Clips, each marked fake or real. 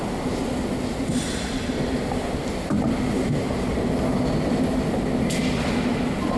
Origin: real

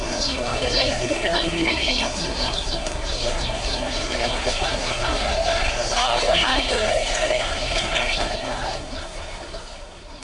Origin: fake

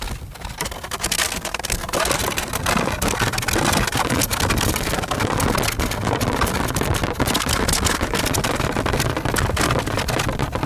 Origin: real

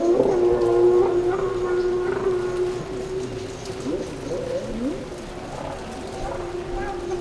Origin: real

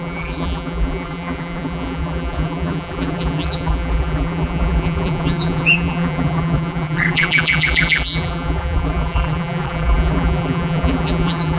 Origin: fake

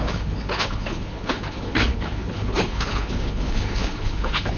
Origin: fake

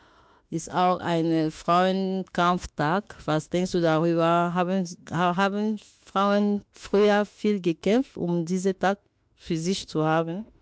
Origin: fake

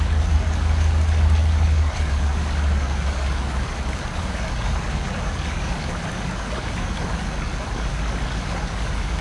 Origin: fake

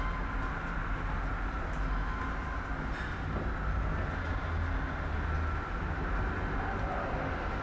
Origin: real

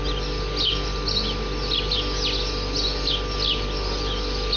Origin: real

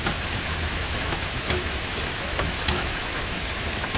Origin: fake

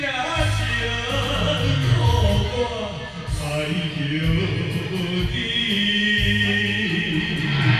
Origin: real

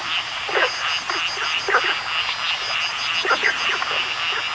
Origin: real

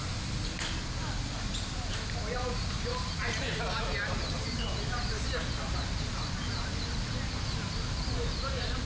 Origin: real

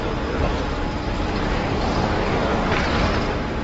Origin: fake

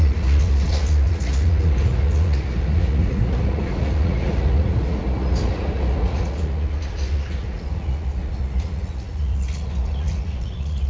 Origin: fake